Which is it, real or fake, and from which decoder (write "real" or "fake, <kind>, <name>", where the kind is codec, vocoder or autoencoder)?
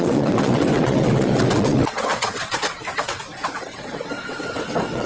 fake, vocoder, WaveNeXt